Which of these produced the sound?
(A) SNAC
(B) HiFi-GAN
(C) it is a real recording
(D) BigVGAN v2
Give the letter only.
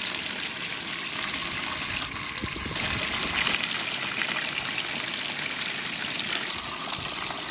C